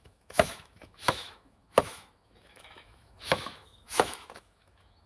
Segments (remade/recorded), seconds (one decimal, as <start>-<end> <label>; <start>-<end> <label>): 0.0-5.1 remade